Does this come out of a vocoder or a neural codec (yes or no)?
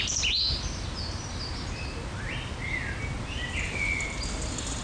no